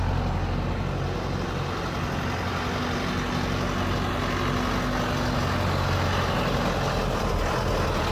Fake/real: real